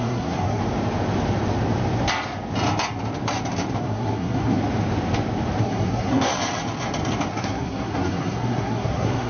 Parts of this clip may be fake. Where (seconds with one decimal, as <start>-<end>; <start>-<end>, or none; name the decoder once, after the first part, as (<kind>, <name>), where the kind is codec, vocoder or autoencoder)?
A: 0.0-0.6 (codec, SNAC); 3.8-4.6; 5.6-6.3; 7.3-9.3